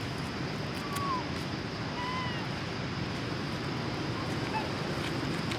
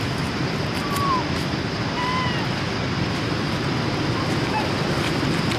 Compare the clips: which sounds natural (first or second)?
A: first